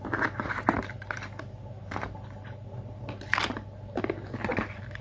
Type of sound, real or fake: real